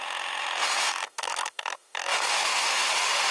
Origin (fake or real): fake